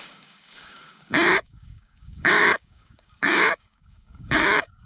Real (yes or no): no